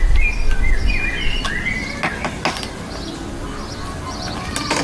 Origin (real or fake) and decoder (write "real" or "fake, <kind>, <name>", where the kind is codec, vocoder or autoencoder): real